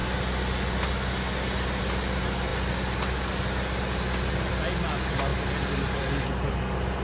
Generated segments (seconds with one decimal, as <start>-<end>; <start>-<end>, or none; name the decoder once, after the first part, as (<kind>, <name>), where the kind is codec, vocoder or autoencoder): none